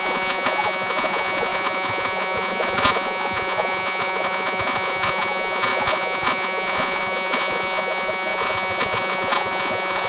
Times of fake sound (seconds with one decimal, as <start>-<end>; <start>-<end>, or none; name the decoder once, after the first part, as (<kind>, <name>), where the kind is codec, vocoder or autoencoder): 0.0-10.1 (vocoder, Vocos)